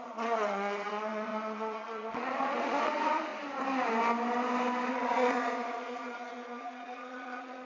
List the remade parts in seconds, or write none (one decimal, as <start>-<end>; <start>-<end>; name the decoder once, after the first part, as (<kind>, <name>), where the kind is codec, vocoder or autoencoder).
0.0-3.3 (vocoder, Vocos); 4.9-7.6